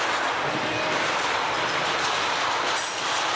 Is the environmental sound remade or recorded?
recorded